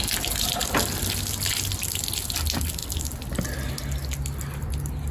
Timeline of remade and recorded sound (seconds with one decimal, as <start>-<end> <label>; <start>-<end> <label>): 0.0-2.8 recorded; 2.8-3.7 remade; 3.7-5.1 recorded

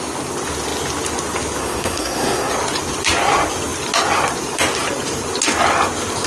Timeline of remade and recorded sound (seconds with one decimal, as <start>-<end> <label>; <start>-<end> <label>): 0.0-1.6 recorded; 1.6-2.5 remade; 2.5-6.3 recorded